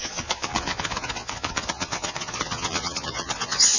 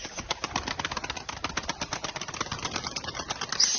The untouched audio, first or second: second